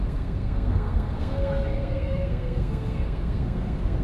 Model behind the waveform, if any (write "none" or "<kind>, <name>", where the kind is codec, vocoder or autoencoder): codec, SNAC